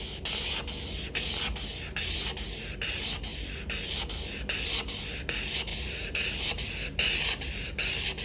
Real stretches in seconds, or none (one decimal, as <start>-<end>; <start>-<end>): 0.0-5.7; 6.6-8.2